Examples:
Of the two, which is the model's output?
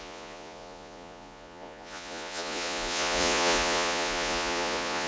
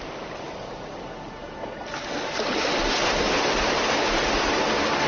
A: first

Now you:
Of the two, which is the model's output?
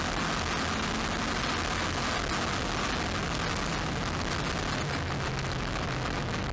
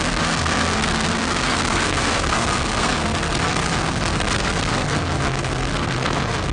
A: second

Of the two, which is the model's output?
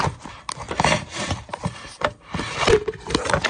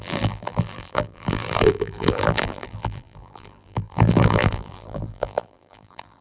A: second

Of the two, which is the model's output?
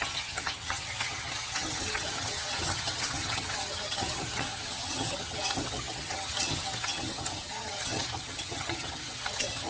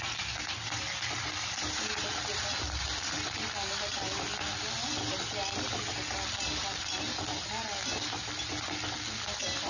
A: first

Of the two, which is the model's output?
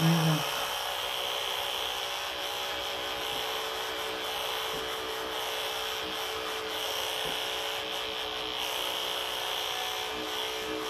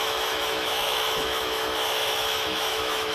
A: second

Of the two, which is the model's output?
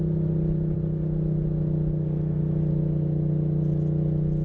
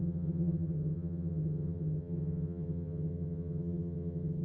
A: second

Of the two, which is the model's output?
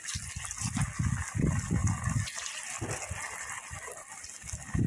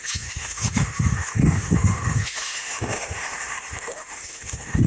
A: second